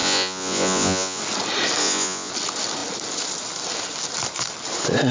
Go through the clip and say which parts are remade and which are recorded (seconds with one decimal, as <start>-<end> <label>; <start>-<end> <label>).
0.0-1.2 remade; 1.2-1.8 recorded; 1.8-2.3 remade; 2.3-5.1 recorded